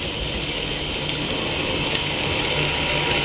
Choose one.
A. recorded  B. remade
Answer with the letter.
A